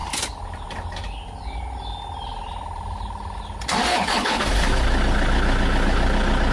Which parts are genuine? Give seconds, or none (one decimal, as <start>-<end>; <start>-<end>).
0.0-3.9; 4.4-6.5